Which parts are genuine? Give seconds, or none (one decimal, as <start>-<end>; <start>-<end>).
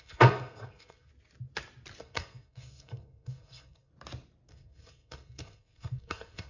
1.1-2.0; 3.9-4.5